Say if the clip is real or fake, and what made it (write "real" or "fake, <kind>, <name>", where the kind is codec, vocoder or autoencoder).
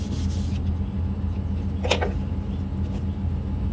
real